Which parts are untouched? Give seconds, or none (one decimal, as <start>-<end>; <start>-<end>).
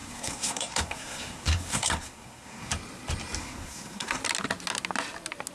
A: 2.7-3.4; 4.2-5.5